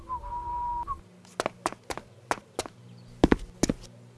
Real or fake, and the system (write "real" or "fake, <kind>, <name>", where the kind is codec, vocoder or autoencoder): real